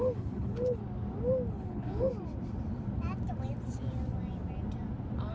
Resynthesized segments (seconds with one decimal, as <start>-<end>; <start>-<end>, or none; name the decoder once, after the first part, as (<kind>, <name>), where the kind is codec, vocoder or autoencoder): 0.0-0.8 (codec, HILCodec); 1.5-2.1